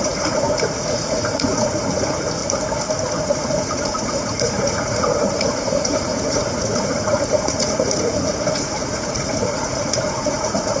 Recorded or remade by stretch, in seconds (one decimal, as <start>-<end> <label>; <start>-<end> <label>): 0.0-2.4 remade; 2.4-3.1 recorded; 3.1-10.8 remade